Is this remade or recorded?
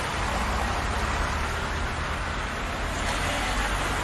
recorded